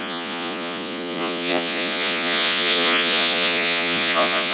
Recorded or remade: remade